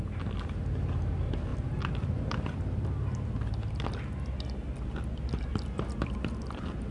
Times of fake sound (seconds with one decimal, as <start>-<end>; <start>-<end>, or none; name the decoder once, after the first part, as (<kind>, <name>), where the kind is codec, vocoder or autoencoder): none